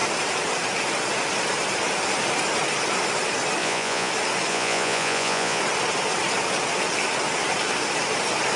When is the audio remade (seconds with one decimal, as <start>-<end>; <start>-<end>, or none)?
3.6-4.1; 4.5-5.6